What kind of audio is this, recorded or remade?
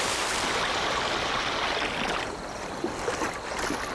recorded